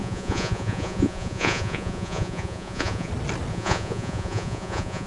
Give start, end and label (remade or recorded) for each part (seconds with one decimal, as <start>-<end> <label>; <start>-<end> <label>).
0.0-3.1 remade; 3.1-3.5 recorded; 3.5-5.1 remade

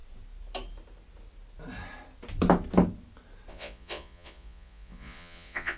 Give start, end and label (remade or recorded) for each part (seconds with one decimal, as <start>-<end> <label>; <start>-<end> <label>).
0.0-3.5 recorded; 3.5-5.8 remade

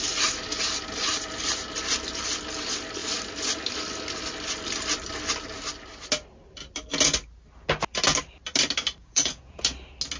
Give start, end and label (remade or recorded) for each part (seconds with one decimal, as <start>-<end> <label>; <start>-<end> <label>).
0.0-9.0 recorded; 9.0-9.6 remade; 9.6-10.2 recorded

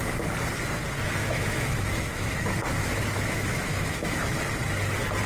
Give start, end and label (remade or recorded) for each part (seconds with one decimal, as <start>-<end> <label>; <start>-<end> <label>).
0.0-1.2 recorded; 1.2-4.4 remade; 4.4-5.3 recorded

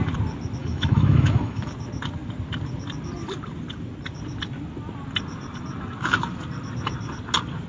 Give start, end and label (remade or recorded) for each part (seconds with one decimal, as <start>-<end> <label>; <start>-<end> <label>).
0.0-0.6 recorded; 0.6-1.7 remade; 1.7-7.7 recorded

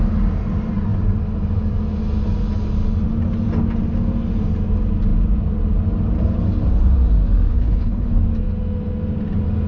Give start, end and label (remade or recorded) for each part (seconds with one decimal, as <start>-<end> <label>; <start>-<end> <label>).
0.0-7.5 recorded; 7.5-8.1 remade; 8.1-9.7 recorded

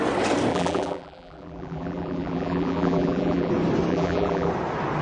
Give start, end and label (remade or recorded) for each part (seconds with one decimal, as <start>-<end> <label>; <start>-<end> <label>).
0.0-0.5 recorded; 0.5-3.5 remade; 3.5-3.9 recorded; 3.9-4.5 remade; 4.5-5.0 recorded

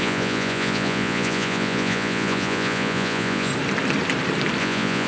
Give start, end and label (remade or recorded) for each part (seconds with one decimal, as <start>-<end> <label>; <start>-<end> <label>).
0.0-3.5 remade; 3.5-4.6 recorded; 4.6-5.1 remade